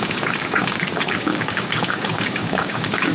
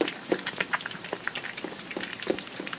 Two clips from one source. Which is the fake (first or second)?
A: first